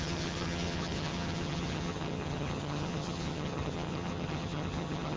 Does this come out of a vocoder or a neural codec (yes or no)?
yes